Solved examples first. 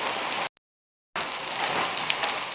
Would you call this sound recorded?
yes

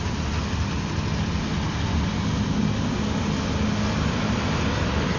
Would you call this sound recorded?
yes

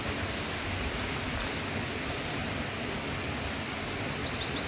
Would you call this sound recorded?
yes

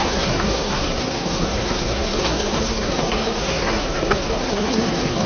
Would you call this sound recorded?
no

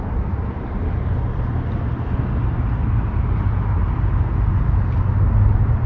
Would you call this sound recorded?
yes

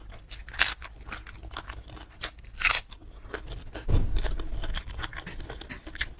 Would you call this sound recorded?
yes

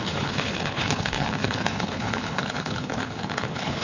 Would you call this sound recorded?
no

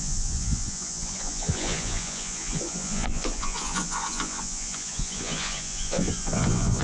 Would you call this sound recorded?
no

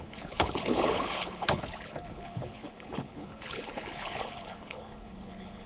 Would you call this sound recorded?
no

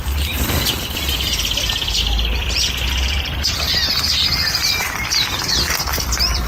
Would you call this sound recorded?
no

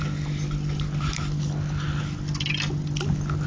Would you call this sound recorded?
yes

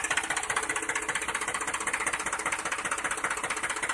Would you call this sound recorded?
yes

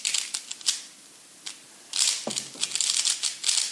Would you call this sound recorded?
yes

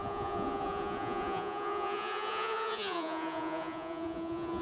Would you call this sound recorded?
no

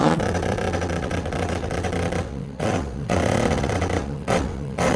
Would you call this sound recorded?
no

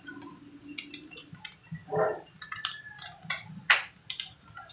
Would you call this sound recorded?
yes